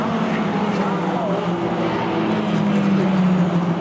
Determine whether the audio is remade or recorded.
recorded